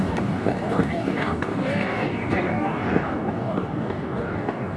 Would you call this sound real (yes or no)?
no